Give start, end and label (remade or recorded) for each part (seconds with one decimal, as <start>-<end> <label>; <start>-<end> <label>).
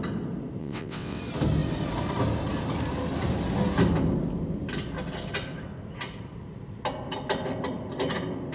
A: 0.0-0.6 recorded; 0.6-1.2 remade; 1.2-8.5 recorded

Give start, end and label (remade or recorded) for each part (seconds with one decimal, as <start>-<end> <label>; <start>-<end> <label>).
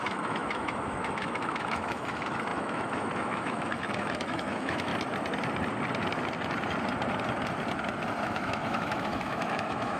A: 0.0-4.9 remade; 4.9-8.2 recorded; 8.2-10.0 remade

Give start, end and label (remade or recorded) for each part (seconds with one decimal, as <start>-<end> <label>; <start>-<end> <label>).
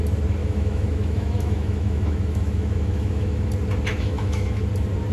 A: 0.0-0.4 recorded; 0.4-3.5 remade; 3.5-3.9 recorded; 3.9-4.6 remade; 4.6-5.1 recorded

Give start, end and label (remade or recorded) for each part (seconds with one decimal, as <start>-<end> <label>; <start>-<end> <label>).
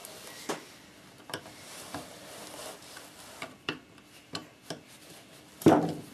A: 0.0-1.4 recorded; 1.4-6.1 remade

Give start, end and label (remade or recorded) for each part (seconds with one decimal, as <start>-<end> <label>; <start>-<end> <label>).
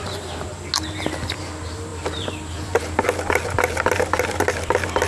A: 0.0-5.1 recorded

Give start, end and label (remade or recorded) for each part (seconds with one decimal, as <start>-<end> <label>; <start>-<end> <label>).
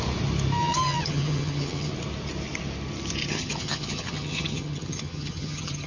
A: 0.0-0.6 recorded; 0.6-1.9 remade; 1.9-3.3 recorded; 3.3-5.9 remade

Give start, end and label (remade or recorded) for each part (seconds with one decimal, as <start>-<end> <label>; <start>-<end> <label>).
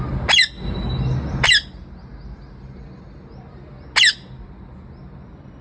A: 0.0-5.6 recorded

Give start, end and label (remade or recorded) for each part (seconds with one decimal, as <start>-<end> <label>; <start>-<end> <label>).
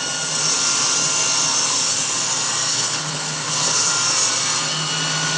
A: 0.0-2.7 recorded; 2.7-3.9 remade; 3.9-5.4 recorded